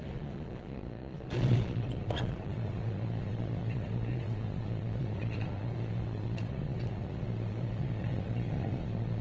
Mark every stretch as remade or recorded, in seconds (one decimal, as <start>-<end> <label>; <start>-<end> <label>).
0.0-9.2 remade